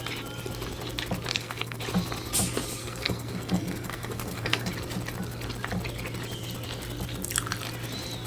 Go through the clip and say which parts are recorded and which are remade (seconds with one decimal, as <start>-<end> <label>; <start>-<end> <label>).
0.0-1.3 recorded; 1.3-1.8 remade; 1.8-2.8 recorded; 2.8-4.7 remade; 4.7-8.3 recorded